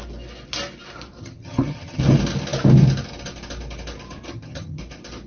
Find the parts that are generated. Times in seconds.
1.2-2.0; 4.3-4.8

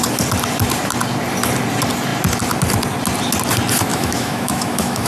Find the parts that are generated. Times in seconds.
3.9-5.1

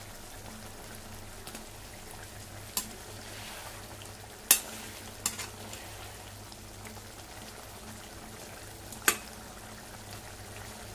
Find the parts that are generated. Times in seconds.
none

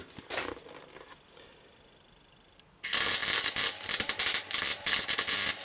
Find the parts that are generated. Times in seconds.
3.2-4.2